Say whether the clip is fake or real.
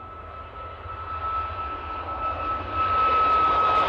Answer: real